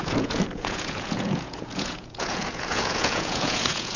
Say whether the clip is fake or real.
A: fake